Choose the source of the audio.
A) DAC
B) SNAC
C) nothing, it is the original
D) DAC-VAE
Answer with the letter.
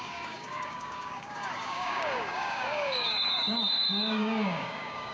A